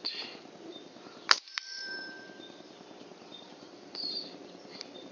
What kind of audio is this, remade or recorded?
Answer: remade